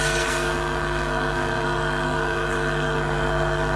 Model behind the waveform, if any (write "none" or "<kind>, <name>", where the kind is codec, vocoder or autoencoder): codec, SNAC